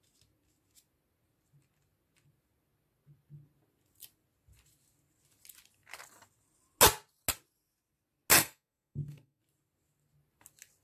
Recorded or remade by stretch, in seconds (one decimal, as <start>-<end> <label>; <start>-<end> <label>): 0.0-8.4 recorded; 8.4-9.4 remade; 9.4-10.8 recorded